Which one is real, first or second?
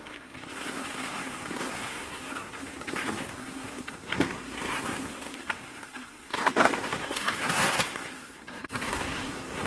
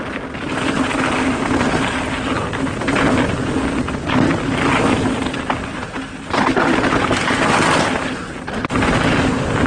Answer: second